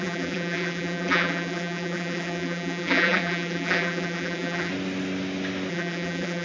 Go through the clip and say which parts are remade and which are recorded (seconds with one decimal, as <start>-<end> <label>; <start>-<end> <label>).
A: 0.0-4.7 remade; 4.7-5.7 recorded; 5.7-6.4 remade